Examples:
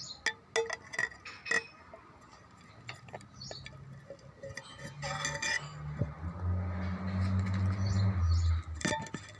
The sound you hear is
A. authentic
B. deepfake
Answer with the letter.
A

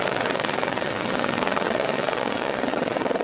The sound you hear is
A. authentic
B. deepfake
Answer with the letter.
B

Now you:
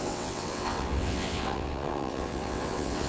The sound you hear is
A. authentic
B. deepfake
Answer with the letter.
B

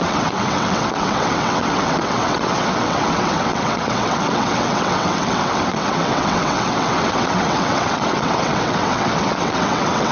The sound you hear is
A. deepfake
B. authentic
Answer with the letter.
A